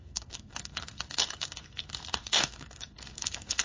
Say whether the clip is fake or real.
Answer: fake